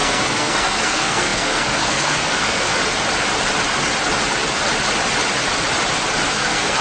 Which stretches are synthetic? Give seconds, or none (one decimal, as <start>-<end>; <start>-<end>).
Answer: 0.0-2.8; 6.3-6.8